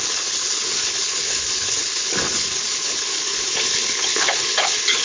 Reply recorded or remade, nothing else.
remade